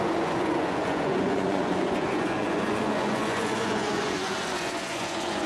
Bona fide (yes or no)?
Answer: no